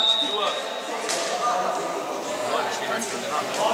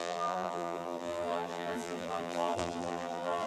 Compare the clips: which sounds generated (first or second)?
second